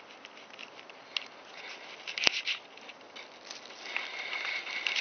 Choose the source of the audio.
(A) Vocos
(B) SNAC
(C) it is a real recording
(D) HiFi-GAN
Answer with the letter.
C